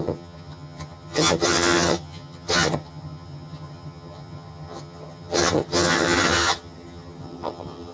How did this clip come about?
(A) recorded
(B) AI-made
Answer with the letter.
B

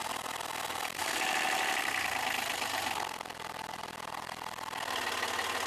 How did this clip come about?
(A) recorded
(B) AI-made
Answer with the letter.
A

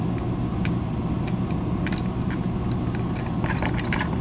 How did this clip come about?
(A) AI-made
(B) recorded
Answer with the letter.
B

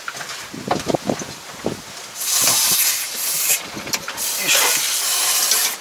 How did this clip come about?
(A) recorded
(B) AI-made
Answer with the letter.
A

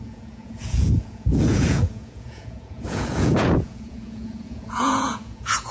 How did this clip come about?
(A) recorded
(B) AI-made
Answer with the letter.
B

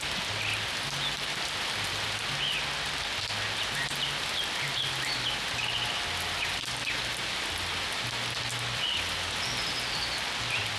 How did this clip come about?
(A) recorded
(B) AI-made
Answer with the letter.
A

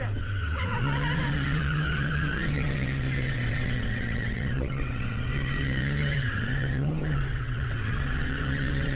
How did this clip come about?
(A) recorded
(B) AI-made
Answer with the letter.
B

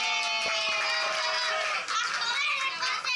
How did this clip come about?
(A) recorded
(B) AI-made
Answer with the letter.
A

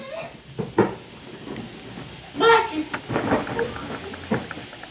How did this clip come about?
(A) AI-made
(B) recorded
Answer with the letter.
B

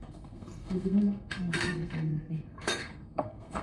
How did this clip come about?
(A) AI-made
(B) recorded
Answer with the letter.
A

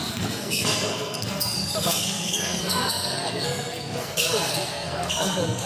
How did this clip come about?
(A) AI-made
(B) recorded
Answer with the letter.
A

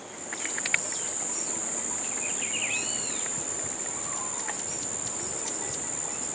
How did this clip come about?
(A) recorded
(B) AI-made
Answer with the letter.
A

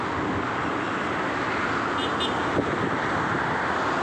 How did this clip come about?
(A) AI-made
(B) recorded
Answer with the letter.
B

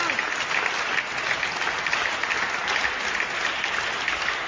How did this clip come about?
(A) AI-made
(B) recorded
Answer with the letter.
B